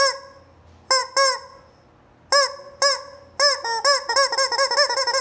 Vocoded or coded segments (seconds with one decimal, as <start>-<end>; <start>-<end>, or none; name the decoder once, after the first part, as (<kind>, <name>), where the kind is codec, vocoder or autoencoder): none